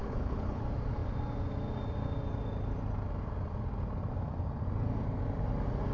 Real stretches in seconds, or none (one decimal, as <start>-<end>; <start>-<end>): 0.6-5.9